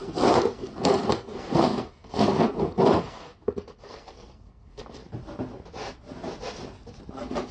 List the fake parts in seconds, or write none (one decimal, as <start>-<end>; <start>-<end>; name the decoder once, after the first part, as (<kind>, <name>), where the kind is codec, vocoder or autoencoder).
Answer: 0.0-5.0 (codec, SNAC); 7.1-7.5